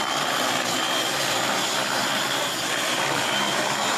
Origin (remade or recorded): recorded